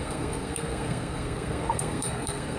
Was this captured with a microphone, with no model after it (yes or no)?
no